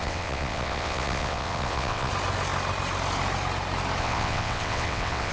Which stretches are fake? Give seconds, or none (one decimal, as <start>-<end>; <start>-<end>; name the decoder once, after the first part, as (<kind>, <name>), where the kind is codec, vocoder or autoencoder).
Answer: 0.0-2.1 (vocoder, WaveNeXt); 4.0-5.3